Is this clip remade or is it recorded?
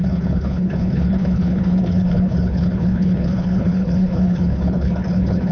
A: remade